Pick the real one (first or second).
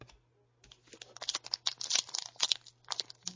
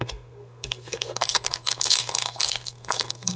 first